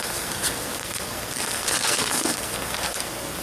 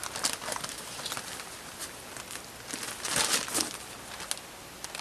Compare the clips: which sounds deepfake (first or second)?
first